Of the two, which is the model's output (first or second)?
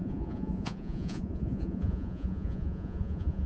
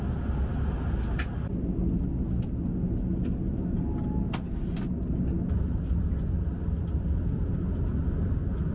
first